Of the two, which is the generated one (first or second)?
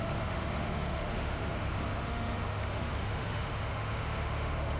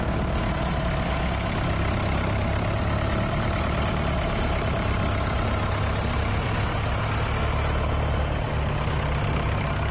first